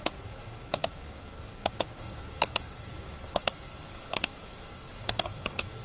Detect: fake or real fake